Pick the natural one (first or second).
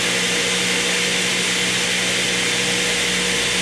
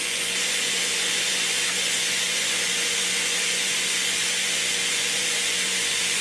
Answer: first